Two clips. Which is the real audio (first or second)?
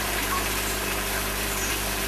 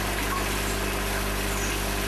second